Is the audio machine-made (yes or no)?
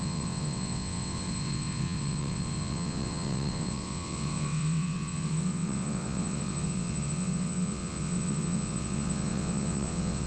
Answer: yes